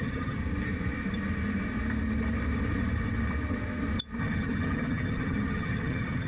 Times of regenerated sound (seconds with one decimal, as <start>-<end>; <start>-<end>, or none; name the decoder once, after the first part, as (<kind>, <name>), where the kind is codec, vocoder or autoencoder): 0.0-0.4 (vocoder, HiFi-GAN); 4.2-6.3